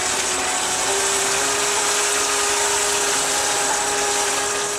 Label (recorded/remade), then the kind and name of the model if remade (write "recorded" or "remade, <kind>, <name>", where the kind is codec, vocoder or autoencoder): recorded